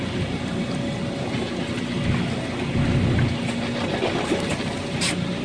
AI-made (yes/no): no